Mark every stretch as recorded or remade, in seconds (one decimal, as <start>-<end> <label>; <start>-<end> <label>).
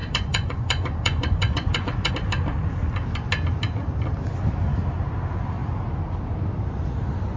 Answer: 0.0-2.1 remade; 2.1-7.4 recorded